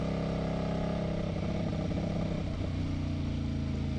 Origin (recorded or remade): recorded